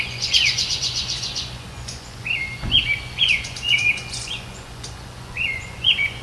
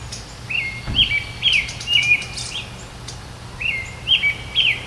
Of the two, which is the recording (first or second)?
second